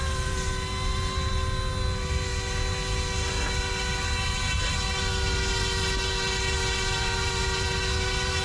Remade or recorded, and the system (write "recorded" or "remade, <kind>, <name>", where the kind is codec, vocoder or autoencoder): recorded